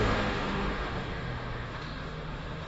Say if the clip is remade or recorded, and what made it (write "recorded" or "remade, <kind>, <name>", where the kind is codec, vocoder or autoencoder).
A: remade, autoencoder, DAC-VAE